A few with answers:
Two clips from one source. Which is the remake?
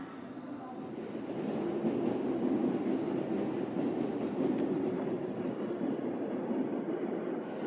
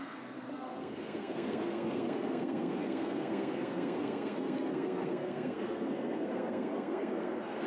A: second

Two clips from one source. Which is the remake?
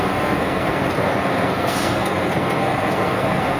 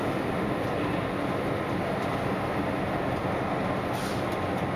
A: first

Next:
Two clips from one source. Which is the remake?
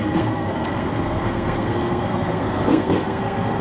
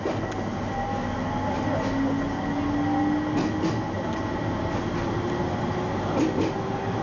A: first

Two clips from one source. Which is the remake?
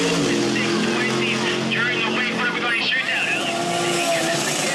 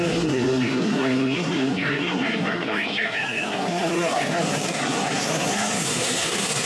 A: second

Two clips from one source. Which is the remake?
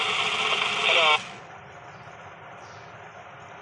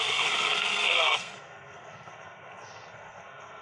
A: second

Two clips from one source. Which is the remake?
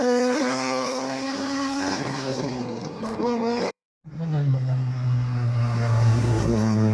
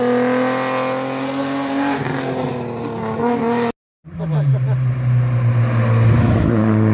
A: first